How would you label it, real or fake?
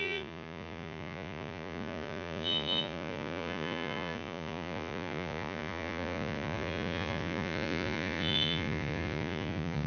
fake